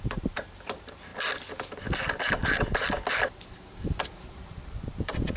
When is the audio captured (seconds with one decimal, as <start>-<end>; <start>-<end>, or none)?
1.1-4.3